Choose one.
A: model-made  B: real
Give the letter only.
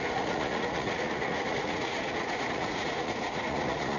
A